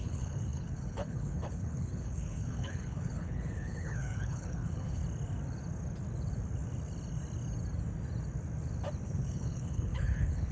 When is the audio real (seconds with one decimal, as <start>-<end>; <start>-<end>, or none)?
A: 5.0-9.0